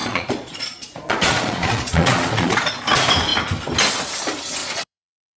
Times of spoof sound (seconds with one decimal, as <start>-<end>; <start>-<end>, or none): 0.0-2.7; 4.6-5.4